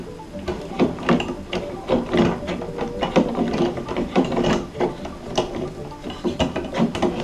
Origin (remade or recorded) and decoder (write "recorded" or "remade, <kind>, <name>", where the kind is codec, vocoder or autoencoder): recorded